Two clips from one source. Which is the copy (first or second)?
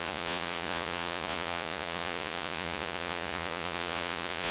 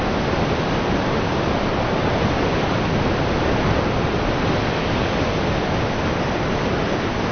first